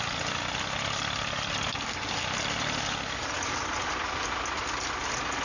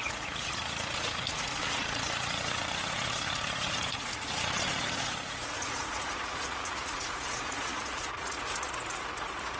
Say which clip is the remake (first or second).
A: second